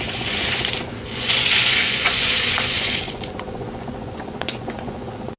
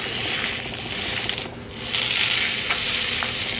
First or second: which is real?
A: second